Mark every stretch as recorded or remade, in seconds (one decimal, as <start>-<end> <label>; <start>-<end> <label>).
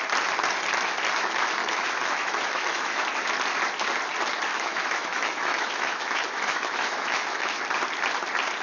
0.0-1.6 recorded; 1.6-3.0 remade; 3.0-4.5 recorded; 4.5-7.6 remade; 7.6-8.6 recorded